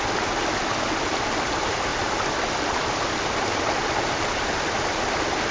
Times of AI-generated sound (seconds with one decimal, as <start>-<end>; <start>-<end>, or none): 1.9-5.5